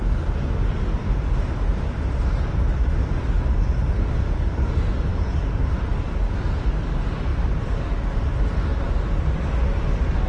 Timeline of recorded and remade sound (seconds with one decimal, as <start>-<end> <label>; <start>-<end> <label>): 0.0-5.1 recorded; 5.1-5.9 remade; 5.9-8.7 recorded; 8.7-9.2 remade; 9.2-10.3 recorded